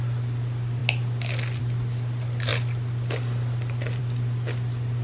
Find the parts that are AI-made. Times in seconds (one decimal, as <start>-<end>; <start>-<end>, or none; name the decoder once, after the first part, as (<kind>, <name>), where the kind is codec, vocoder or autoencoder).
none